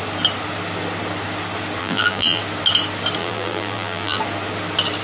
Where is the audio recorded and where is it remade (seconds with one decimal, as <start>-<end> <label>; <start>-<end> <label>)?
0.0-1.8 recorded; 1.8-2.4 remade; 2.4-3.2 recorded; 3.2-4.2 remade; 4.2-5.0 recorded